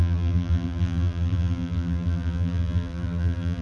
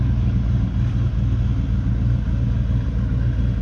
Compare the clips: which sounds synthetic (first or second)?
first